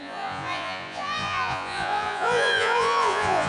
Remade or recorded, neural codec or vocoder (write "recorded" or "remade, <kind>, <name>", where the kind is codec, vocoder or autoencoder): remade, vocoder, Vocos